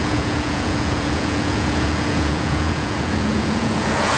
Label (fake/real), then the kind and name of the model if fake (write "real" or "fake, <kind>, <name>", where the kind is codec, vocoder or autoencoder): fake, vocoder, Vocos